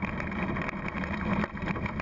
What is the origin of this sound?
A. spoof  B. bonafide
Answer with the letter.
B